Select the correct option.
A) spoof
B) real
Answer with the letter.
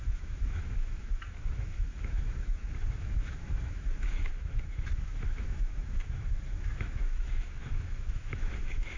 A